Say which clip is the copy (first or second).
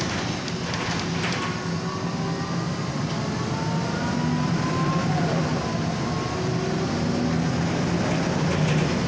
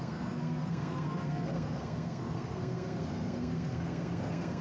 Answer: second